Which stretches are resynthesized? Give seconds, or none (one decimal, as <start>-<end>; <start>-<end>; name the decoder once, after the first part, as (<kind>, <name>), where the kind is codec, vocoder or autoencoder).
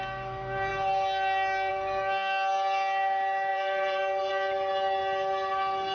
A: 3.5-4.3 (vocoder, BigVGAN v2)